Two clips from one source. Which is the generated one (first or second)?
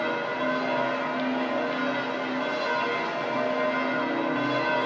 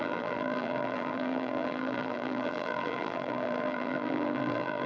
second